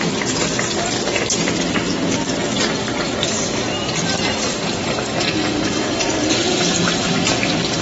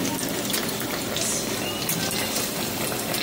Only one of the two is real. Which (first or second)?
second